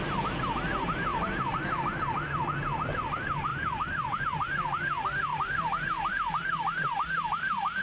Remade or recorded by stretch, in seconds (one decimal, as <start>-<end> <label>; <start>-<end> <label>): 0.0-1.1 recorded; 1.1-2.0 remade; 2.0-3.5 recorded; 3.5-4.2 remade; 4.2-5.3 recorded; 5.3-6.1 remade; 6.1-7.8 recorded